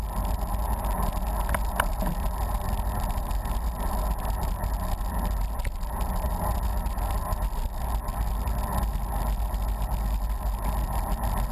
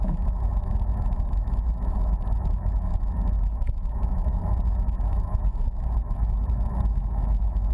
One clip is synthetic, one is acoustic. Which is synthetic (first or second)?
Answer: second